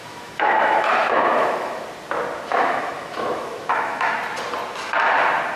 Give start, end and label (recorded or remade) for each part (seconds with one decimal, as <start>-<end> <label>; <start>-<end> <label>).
0.0-1.8 remade; 1.8-2.5 recorded; 2.5-4.1 remade; 4.1-5.6 recorded